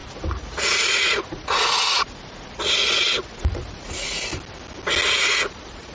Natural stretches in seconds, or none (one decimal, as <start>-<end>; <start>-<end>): 4.3-5.1